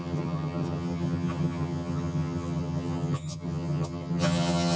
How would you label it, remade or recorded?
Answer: remade